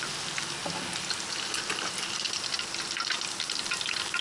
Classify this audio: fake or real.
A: real